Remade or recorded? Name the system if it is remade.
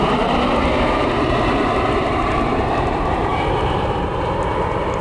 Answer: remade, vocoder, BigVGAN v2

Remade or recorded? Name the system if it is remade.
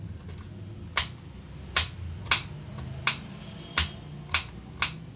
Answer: recorded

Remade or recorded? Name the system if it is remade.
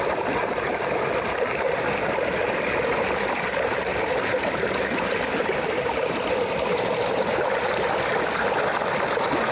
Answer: recorded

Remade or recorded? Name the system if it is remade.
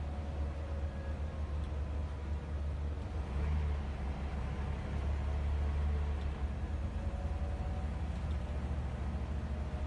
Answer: recorded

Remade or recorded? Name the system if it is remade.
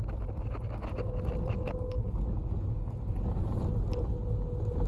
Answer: recorded